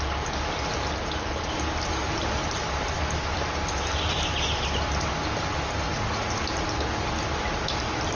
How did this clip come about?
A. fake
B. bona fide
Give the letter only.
B